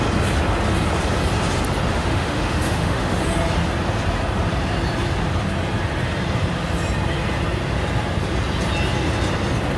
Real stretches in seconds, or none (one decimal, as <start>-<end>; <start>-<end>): 0.0-1.9; 3.2-9.8